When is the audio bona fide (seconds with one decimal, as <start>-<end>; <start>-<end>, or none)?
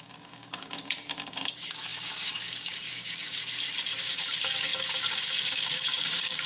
3.4-4.0